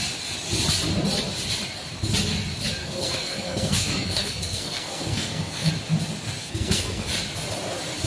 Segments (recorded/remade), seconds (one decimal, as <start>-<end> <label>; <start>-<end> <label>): 0.0-2.8 recorded; 2.8-5.7 remade; 5.7-6.4 recorded; 6.4-7.1 remade; 7.1-8.1 recorded